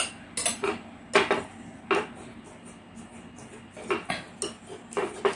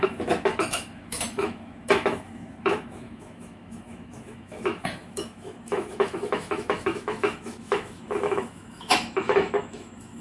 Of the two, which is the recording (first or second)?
first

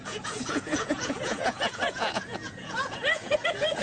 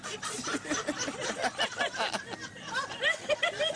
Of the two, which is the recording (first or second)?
second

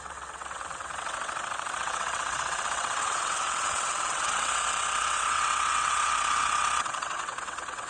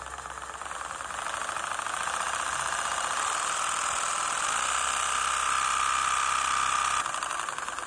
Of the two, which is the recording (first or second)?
second